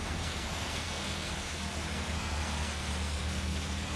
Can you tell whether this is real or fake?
fake